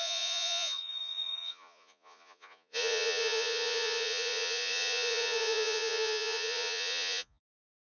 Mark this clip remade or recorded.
remade